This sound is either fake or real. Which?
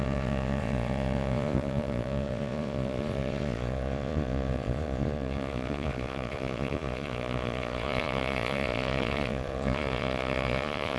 fake